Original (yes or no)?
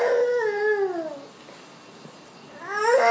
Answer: yes